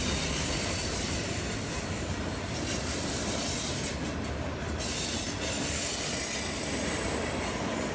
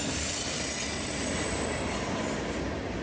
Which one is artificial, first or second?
first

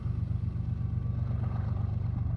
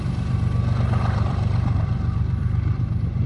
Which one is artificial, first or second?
second